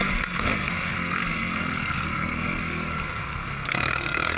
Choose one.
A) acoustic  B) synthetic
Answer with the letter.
B